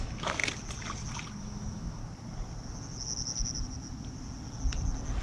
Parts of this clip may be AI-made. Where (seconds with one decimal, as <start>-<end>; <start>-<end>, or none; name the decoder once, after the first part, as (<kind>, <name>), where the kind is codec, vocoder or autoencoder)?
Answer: 0.0-0.4 (autoencoder, DAC-VAE); 1.4-2.0